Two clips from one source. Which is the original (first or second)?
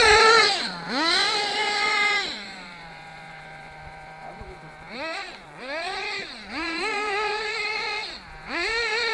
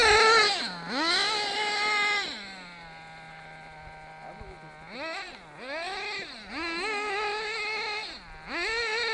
second